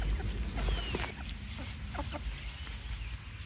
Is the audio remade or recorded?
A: recorded